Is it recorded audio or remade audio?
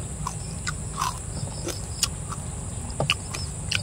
recorded